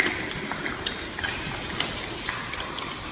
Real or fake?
real